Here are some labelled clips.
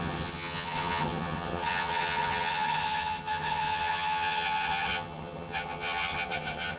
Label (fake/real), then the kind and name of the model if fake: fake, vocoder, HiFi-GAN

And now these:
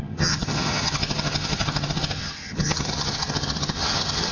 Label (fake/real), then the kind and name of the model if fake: fake, vocoder, HiFi-GAN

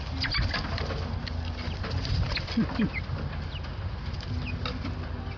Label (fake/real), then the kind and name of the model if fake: real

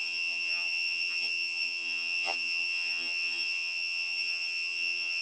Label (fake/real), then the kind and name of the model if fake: fake, vocoder, HiFi-GAN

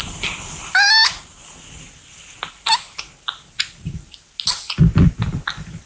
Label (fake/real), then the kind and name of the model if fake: real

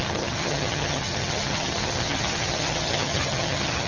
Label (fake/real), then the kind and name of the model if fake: fake, vocoder, HiFi-GAN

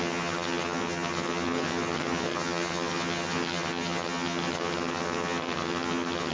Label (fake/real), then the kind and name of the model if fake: fake, vocoder, HiFi-GAN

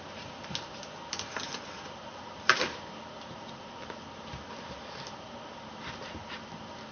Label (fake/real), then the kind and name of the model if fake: real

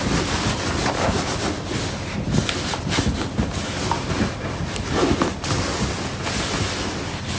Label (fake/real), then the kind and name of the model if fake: real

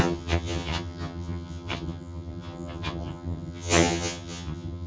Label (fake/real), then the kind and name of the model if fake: fake, vocoder, HiFi-GAN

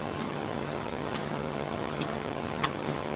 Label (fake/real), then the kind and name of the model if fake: fake, vocoder, HiFi-GAN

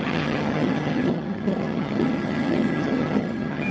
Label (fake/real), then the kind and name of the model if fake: fake, vocoder, HiFi-GAN